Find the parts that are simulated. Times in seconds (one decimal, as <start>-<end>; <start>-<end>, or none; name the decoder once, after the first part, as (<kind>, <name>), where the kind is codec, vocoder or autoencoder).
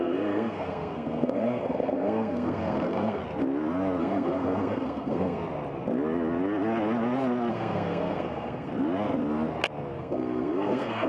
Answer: 0.0-3.2 (codec, SNAC); 4.0-5.4; 7.5-8.7; 10.0-11.1